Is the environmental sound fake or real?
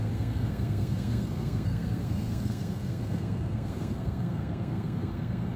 fake